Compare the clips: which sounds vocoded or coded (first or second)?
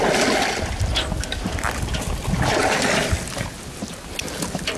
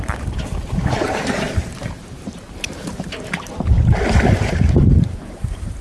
second